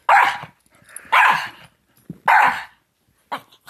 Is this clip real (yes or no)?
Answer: yes